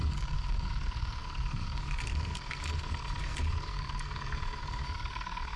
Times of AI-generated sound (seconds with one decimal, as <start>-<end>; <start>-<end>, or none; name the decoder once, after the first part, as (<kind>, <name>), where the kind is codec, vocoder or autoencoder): 0.0-5.6 (codec, SNAC)